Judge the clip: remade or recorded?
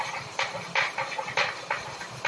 recorded